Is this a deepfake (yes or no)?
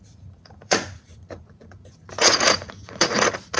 yes